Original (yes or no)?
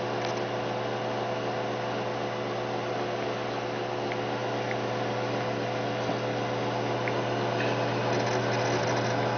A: yes